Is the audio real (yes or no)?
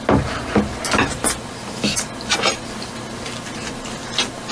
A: yes